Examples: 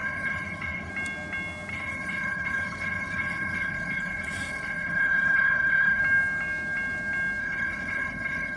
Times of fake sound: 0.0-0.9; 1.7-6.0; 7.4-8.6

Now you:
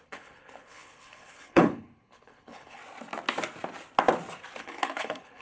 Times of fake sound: 0.0-2.8; 4.6-5.4

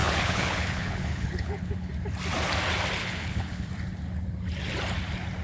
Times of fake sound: 0.0-1.9; 3.0-3.7

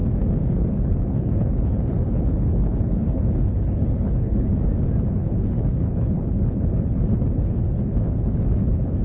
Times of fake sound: 0.5-4.5; 5.1-9.0

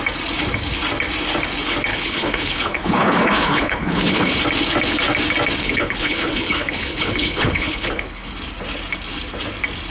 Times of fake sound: 1.9-4.4; 5.6-8.3

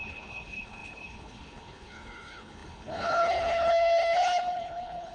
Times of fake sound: 0.0-5.1